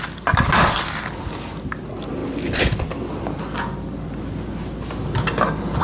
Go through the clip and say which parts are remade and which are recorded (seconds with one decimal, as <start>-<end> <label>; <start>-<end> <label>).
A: 0.0-5.8 recorded